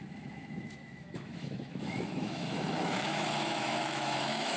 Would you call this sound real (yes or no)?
no